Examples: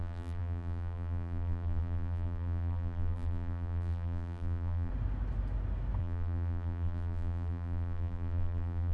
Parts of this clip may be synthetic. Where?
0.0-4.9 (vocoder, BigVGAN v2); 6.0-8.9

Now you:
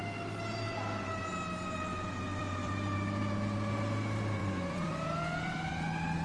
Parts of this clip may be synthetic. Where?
2.3-3.2 (vocoder, BigVGAN v2); 4.4-5.7

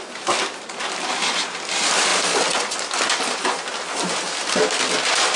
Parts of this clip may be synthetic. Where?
none

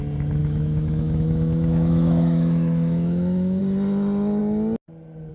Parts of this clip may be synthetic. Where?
0.4-3.6 (autoencoder, DAC-VAE)